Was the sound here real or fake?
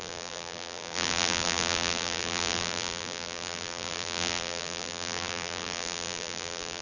fake